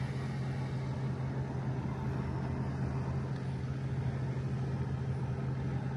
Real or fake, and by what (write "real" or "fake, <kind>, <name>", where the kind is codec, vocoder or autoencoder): real